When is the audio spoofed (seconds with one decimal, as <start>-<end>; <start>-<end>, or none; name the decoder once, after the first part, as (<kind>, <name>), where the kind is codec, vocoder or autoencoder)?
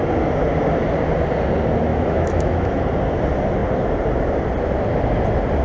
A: 1.9-2.8 (autoencoder, DAC-VAE)